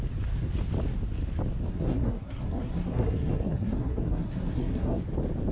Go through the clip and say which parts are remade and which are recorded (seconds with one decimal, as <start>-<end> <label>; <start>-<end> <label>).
0.0-1.7 recorded; 1.7-5.0 remade; 5.0-5.5 recorded